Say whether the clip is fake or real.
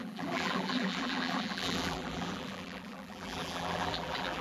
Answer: fake